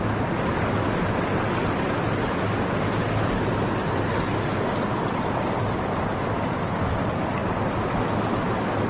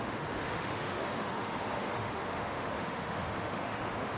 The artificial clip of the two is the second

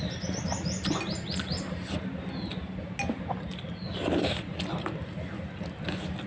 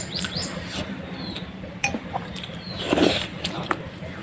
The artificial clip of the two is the second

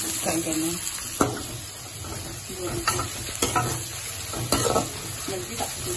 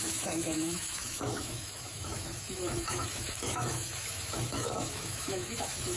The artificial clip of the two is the second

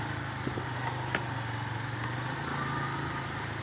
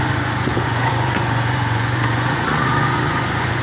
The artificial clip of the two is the second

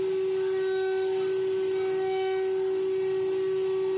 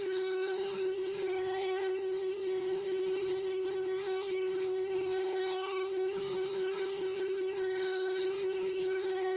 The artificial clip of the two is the second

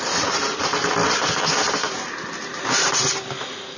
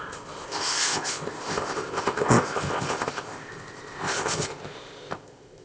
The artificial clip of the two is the second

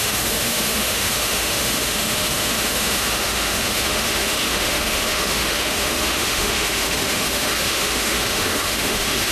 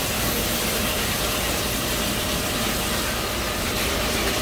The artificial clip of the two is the first